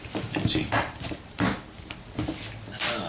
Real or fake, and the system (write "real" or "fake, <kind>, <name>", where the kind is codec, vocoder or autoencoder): real